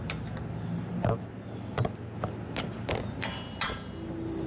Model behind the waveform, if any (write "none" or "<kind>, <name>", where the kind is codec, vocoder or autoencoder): none